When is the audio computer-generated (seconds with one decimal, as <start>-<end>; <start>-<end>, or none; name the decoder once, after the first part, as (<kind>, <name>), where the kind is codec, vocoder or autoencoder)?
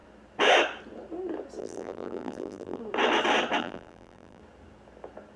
1.6-2.8 (vocoder, BigVGAN v2); 3.6-4.4